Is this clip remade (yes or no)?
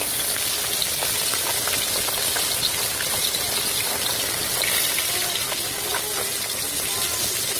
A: no